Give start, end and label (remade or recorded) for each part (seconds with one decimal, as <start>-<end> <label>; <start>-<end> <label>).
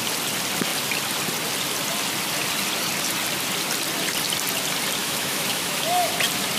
0.0-5.0 recorded; 5.0-6.1 remade; 6.1-6.6 recorded